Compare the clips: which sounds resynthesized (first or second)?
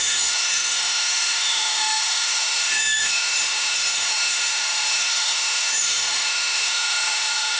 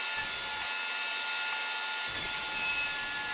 first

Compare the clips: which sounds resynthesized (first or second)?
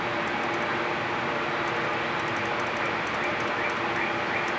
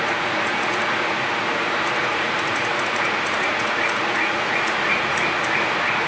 second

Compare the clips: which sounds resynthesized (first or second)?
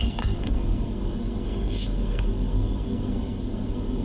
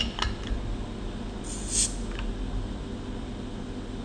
first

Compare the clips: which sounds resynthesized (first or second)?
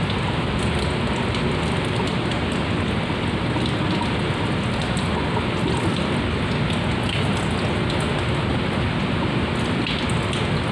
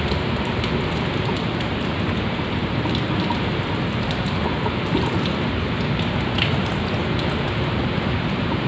second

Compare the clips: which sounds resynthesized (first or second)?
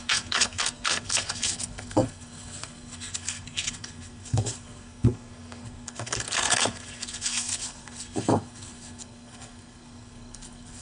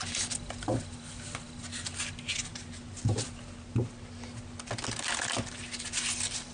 first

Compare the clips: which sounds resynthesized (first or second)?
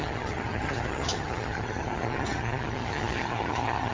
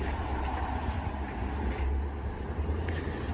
first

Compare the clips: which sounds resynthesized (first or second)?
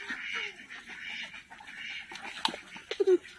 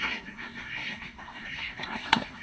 second